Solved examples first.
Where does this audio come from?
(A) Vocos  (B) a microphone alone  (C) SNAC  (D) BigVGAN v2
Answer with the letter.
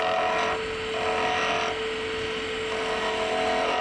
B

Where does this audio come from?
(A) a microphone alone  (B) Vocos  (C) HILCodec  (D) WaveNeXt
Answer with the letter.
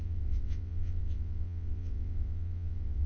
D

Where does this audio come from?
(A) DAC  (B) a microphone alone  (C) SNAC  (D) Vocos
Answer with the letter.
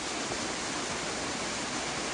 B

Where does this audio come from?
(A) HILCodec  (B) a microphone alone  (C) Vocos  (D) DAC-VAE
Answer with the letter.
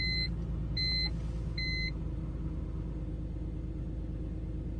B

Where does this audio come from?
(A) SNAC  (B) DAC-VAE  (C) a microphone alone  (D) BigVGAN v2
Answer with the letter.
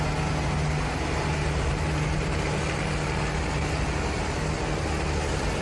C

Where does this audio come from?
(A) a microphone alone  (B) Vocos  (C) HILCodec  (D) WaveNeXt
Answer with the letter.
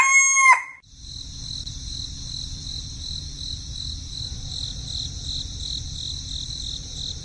A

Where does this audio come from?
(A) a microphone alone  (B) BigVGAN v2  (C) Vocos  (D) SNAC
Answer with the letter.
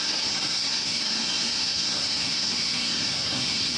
D